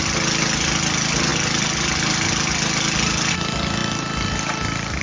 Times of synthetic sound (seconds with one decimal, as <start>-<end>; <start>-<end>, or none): none